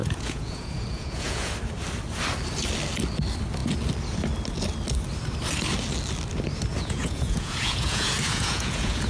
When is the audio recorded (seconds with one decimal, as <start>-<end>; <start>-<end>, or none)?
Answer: 1.5-6.7